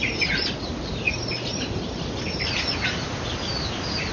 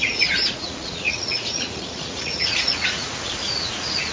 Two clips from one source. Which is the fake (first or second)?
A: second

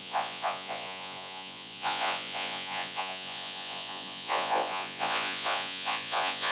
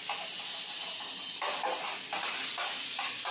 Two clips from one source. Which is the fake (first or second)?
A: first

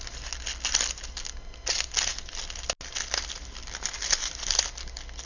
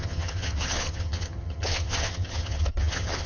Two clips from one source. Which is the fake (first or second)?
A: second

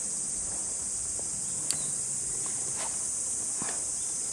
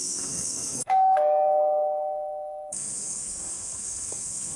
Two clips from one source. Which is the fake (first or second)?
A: second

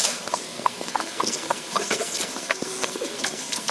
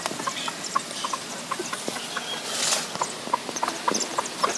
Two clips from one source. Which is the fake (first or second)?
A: first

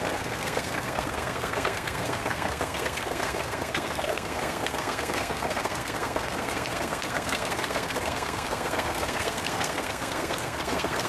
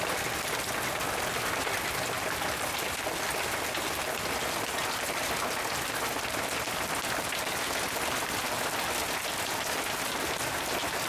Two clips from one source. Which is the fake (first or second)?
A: first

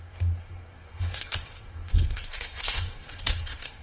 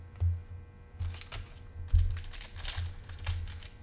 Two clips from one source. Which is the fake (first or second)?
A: first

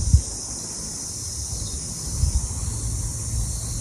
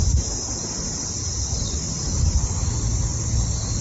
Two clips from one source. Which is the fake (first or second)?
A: second